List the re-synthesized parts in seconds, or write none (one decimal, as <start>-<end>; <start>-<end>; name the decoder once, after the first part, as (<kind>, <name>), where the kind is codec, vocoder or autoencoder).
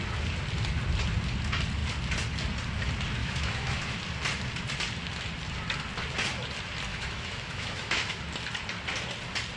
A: 3.2-4.0 (autoencoder, DAC-VAE); 6.9-8.2